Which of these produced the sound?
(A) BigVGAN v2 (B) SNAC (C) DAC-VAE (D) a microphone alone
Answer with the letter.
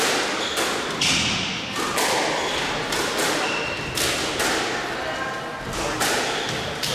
D